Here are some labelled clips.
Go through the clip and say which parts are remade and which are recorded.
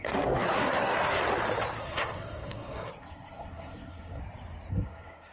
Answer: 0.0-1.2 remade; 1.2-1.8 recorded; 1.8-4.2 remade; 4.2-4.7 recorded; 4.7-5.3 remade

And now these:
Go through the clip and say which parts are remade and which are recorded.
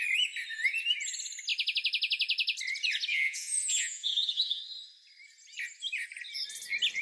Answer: 0.0-3.1 recorded; 3.1-4.6 remade; 4.6-7.0 recorded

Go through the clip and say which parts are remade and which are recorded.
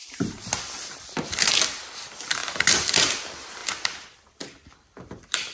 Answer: 0.0-2.4 remade; 2.4-3.0 recorded; 3.0-3.6 remade; 3.6-4.7 recorded; 4.7-5.5 remade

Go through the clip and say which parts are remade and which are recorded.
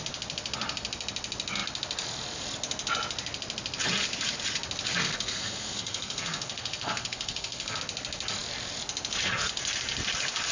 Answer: 0.0-5.0 recorded; 5.0-7.8 remade; 7.8-10.5 recorded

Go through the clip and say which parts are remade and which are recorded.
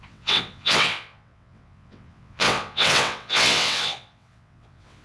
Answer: 0.0-5.0 remade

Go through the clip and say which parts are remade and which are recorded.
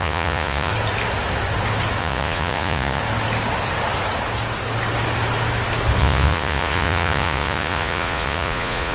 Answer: 0.0-0.7 remade; 0.7-2.0 recorded; 2.0-3.0 remade; 3.0-6.0 recorded; 6.0-8.9 remade